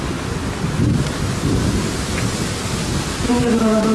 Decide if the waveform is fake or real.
real